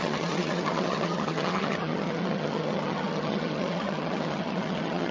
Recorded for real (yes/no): no